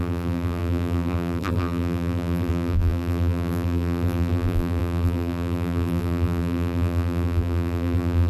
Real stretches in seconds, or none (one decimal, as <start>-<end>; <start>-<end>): none